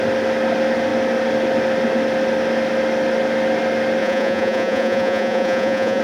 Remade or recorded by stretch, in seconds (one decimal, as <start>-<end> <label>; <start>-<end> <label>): 0.0-4.0 recorded; 4.0-6.0 remade

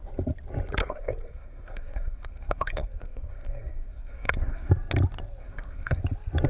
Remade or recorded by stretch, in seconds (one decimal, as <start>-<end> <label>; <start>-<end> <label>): 0.0-0.8 recorded; 0.8-4.7 remade; 4.7-5.4 recorded; 5.4-6.0 remade; 6.0-6.5 recorded